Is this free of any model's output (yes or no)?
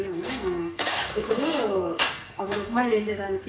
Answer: no